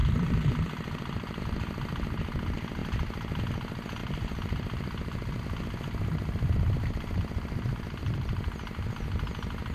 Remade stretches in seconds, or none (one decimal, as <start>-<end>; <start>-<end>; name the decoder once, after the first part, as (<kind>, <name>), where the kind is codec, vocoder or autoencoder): 0.0-1.4 (vocoder, BigVGAN v2); 4.0-5.4; 8.0-8.9